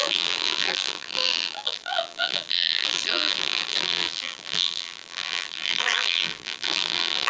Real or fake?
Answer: fake